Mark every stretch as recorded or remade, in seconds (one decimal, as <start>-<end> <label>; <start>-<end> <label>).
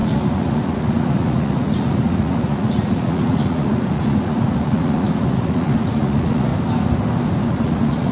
0.0-6.5 remade; 6.5-7.5 recorded; 7.5-8.1 remade